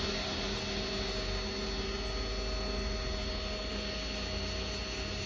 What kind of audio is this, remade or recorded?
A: recorded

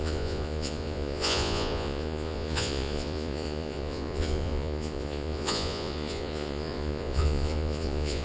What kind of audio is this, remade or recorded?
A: remade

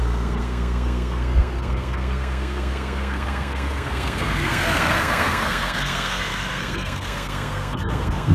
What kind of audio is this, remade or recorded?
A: remade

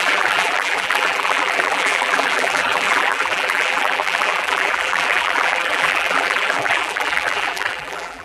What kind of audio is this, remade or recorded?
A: remade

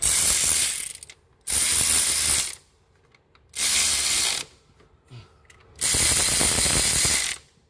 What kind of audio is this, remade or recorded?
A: recorded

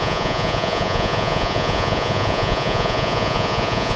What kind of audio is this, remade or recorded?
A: remade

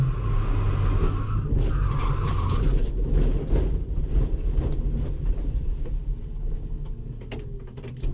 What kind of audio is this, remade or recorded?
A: recorded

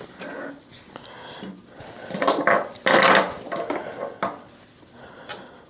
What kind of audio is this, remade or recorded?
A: recorded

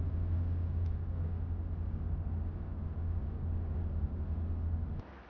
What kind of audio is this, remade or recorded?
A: recorded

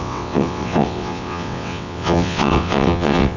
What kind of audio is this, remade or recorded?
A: remade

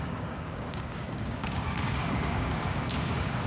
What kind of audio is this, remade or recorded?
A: remade